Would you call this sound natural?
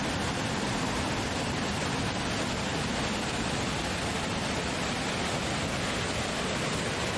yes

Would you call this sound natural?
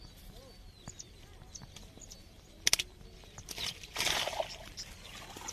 yes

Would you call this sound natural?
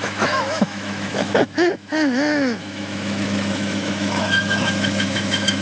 no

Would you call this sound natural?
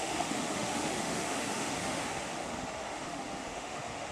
no